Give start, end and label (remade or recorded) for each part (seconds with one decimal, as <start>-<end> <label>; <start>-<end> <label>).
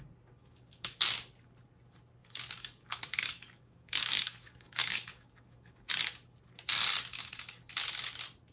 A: 0.0-0.4 recorded; 0.4-1.0 remade; 1.0-2.2 recorded; 2.2-5.9 remade; 5.9-7.1 recorded; 7.1-7.7 remade; 7.7-8.5 recorded